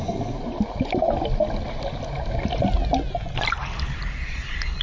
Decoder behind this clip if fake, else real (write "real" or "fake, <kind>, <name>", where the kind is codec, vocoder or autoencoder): real